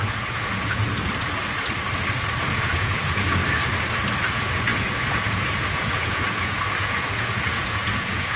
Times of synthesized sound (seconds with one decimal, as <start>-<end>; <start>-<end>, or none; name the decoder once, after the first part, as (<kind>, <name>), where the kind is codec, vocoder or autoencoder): 0.0-0.8 (vocoder, Vocos); 2.5-3.4; 4.3-8.4